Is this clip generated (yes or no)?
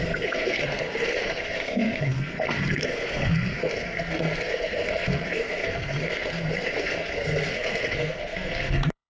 yes